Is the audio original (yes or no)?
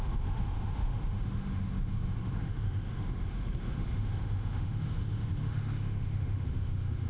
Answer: no